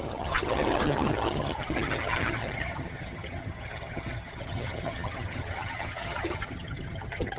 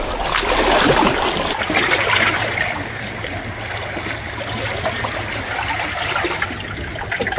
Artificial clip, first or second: first